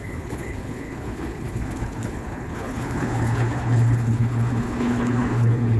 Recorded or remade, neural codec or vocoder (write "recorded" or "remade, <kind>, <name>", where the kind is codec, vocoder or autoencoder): remade, codec, HILCodec